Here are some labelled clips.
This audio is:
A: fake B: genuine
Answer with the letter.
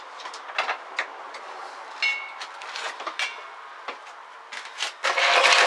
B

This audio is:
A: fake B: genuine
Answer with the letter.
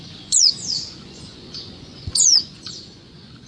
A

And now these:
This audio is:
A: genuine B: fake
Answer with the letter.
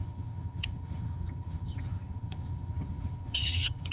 B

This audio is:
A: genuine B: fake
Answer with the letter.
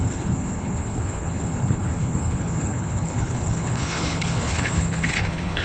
B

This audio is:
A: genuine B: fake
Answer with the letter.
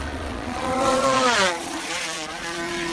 B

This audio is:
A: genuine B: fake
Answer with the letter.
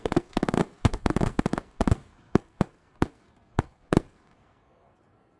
B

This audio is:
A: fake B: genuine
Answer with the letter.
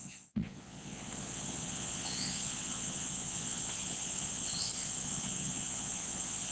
A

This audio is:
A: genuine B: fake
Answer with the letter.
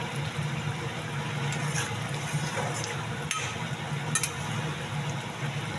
A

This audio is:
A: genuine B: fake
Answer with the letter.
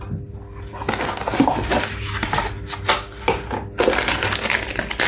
A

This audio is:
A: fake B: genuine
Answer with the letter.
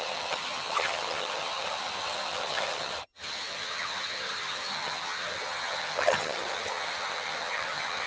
A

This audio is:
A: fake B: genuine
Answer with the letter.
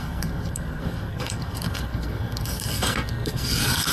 A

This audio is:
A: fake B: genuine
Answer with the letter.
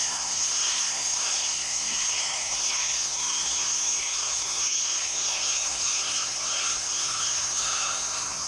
A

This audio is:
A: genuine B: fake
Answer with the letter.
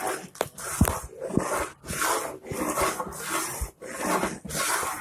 A